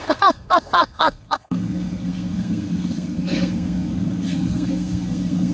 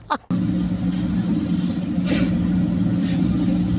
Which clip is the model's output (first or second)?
first